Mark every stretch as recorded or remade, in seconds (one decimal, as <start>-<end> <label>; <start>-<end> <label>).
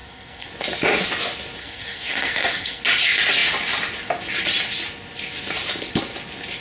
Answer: 0.0-0.5 remade; 0.5-1.6 recorded; 1.6-2.8 remade; 2.8-6.6 recorded